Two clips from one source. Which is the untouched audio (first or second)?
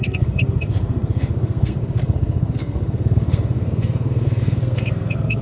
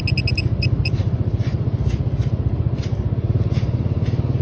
second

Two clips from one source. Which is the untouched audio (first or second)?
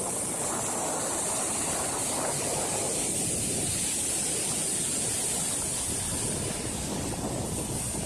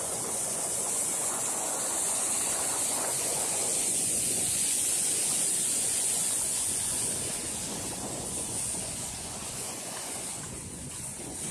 first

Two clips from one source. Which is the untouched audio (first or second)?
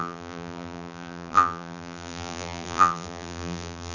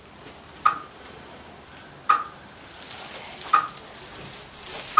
second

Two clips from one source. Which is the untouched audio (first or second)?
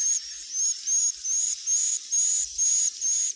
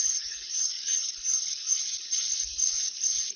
first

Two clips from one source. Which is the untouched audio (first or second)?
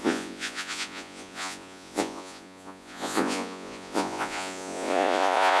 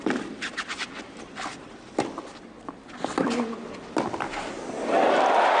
second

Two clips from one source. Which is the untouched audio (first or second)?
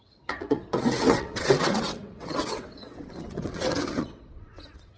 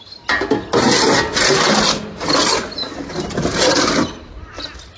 second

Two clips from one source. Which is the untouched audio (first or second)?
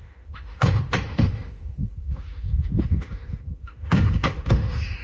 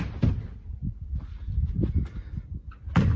second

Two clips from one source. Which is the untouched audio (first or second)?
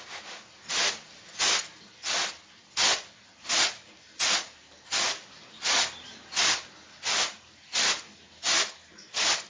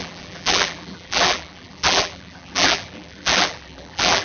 first